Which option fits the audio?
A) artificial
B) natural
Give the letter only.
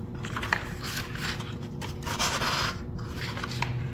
B